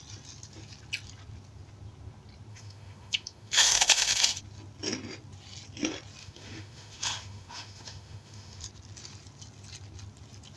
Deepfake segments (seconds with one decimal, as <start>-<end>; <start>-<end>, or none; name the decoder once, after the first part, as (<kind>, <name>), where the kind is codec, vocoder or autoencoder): 2.5-4.4 (autoencoder, DAC-VAE); 6.2-8.6